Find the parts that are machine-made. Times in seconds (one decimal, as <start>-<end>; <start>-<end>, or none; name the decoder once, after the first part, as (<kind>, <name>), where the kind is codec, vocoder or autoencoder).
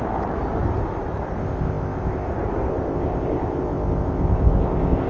1.4-2.3 (codec, ZipCodec); 2.7-5.1